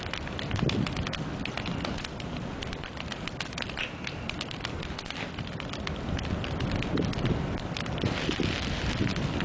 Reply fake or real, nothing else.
real